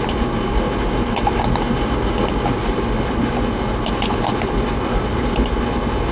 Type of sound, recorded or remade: recorded